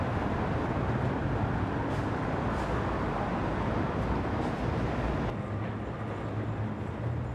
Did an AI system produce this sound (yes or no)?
no